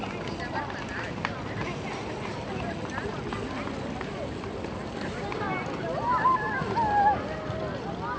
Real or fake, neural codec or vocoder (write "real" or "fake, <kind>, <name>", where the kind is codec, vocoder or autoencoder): real